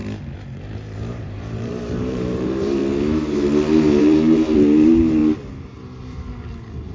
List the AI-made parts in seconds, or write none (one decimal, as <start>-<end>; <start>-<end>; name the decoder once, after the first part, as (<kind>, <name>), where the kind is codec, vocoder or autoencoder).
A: 0.6-2.8 (vocoder, BigVGAN v2); 4.0-5.2